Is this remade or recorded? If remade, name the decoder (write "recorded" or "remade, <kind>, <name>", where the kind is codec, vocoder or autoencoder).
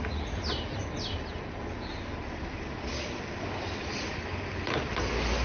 recorded